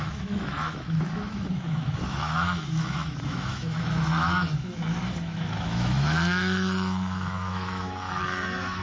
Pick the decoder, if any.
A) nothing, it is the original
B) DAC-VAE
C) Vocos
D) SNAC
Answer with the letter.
B